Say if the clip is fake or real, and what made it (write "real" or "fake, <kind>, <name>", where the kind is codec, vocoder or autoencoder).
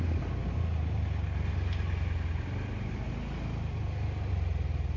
real